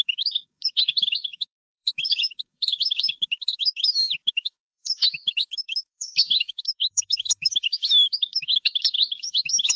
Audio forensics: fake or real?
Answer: fake